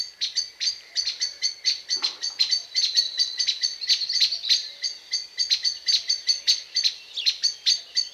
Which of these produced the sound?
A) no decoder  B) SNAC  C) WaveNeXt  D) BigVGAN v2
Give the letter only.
A